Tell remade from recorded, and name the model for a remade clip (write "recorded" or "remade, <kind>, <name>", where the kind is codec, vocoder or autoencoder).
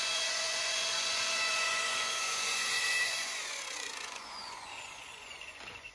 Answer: remade, vocoder, Vocos